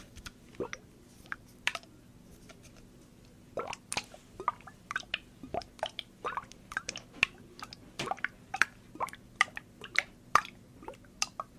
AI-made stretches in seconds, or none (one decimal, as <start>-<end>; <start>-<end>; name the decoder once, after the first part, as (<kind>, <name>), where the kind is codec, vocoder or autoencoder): none

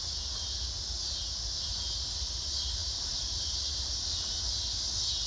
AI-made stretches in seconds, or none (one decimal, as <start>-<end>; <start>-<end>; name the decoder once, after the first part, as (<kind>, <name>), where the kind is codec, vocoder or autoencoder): 2.8-4.4 (vocoder, BigVGAN v2)

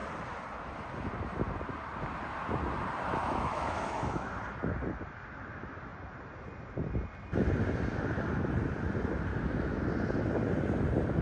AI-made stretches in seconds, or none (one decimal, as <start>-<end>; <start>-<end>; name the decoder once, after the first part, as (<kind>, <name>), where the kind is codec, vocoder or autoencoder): 3.2-4.3 (autoencoder, DAC-VAE); 9.3-9.8

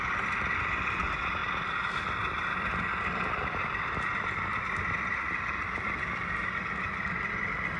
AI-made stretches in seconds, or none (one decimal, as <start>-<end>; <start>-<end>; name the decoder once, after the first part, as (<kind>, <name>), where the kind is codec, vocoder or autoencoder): none